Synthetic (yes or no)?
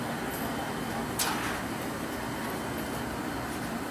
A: no